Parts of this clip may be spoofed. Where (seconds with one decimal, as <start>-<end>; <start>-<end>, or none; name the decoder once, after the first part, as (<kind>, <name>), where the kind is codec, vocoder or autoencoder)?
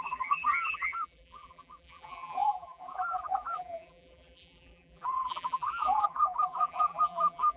0.0-7.6 (vocoder, BigVGAN v2)